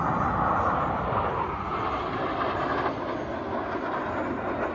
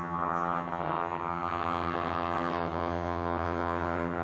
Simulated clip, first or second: second